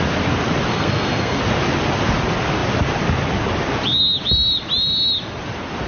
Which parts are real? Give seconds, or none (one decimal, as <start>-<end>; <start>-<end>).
0.0-0.7; 1.4-5.9